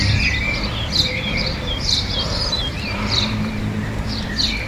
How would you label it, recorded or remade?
remade